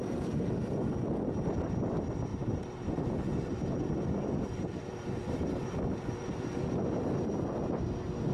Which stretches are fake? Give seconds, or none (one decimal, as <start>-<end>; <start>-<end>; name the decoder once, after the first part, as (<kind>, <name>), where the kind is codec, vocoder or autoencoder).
2.3-6.9 (vocoder, BigVGAN v2)